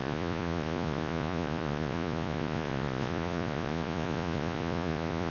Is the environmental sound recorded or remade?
remade